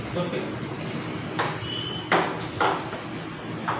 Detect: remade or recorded recorded